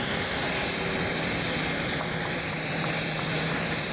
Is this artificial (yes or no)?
yes